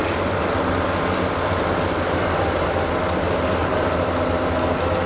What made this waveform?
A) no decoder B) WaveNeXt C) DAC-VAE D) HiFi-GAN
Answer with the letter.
A